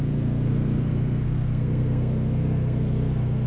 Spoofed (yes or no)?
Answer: yes